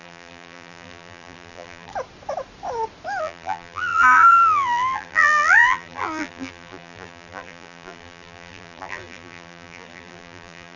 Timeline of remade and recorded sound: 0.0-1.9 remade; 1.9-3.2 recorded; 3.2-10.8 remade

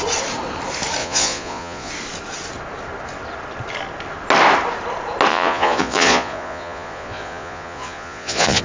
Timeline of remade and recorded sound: 0.0-1.0 recorded; 1.0-1.9 remade; 1.9-5.3 recorded; 5.3-8.6 remade